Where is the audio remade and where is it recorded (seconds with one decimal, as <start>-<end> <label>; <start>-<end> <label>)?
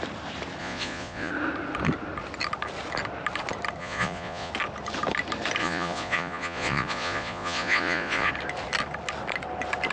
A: 0.0-0.6 recorded; 0.6-1.3 remade; 1.3-3.8 recorded; 3.8-4.5 remade; 4.5-5.6 recorded; 5.6-8.3 remade; 8.3-9.9 recorded